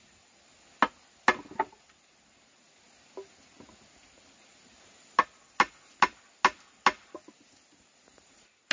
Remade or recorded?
recorded